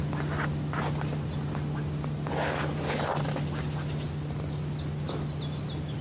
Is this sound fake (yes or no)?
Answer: no